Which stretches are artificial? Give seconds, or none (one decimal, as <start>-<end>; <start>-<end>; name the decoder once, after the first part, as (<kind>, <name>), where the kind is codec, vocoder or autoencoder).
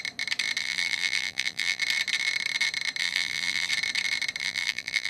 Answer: 0.6-1.8 (vocoder, BigVGAN v2); 3.0-3.7; 4.4-5.1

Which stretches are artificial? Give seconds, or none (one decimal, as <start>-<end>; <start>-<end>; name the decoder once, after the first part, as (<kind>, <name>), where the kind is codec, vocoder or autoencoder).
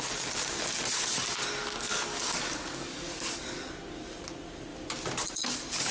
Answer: 1.6-3.7 (codec, DAC)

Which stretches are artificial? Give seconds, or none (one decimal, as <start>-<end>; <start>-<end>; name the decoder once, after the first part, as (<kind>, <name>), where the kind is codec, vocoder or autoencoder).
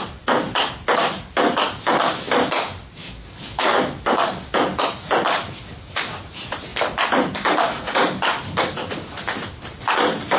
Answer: 3.0-3.8 (codec, DAC)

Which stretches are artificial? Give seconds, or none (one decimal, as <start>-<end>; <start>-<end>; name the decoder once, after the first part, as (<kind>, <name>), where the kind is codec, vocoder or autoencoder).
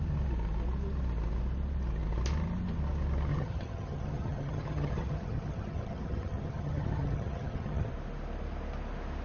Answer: 3.3-7.9 (vocoder, HiFi-GAN)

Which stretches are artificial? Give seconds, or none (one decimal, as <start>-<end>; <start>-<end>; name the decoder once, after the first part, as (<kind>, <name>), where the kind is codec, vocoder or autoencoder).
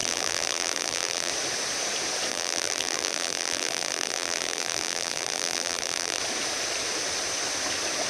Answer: 0.0-1.3 (vocoder, BigVGAN v2); 2.3-6.2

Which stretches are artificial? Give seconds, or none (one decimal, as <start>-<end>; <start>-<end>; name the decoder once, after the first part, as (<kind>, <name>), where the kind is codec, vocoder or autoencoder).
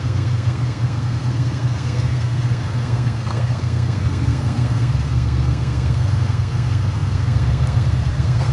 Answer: 0.0-8.5 (codec, SNAC)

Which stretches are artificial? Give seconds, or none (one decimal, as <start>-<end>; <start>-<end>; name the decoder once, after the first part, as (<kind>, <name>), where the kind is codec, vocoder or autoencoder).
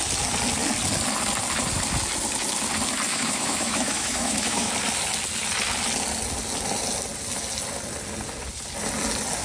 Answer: 3.1-4.7 (autoencoder, DAC-VAE)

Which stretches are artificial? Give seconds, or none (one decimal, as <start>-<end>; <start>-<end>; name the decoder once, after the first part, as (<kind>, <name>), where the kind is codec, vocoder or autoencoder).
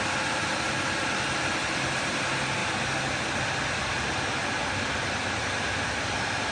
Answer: 4.6-5.4 (vocoder, BigVGAN v2)